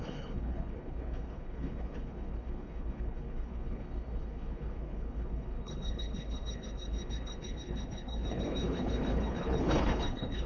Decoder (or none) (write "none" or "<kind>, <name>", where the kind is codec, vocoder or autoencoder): codec, HILCodec